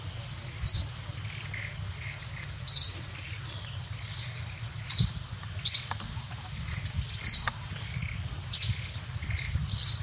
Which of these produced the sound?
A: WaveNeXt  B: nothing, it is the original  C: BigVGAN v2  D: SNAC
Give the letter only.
B